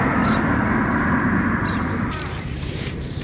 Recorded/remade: remade